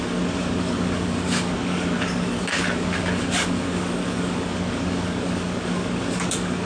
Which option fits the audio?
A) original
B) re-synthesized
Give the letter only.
B